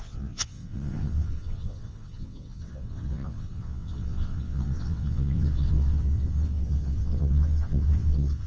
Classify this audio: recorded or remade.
remade